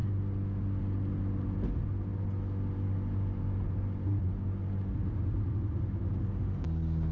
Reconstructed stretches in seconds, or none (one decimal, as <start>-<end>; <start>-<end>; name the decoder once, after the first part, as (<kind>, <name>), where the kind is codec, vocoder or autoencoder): none